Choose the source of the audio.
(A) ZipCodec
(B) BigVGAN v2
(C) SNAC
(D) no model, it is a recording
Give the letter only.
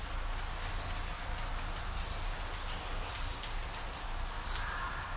D